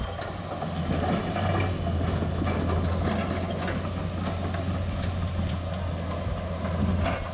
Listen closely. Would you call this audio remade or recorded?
recorded